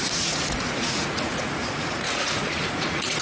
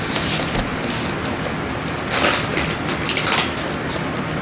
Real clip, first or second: second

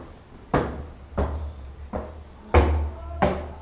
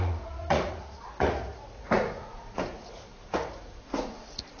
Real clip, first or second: first